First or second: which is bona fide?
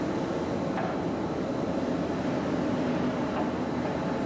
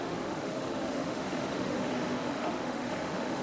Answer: first